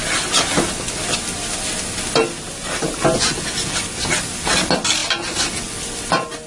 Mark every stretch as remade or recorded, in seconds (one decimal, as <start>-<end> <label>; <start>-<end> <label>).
0.0-6.5 recorded